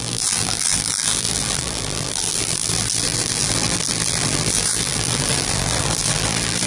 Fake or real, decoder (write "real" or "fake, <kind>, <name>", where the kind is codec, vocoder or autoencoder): fake, vocoder, BigVGAN v2